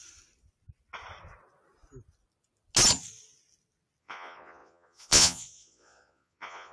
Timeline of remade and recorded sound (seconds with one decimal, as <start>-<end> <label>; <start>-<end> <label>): 0.0-4.0 recorded; 4.0-6.7 remade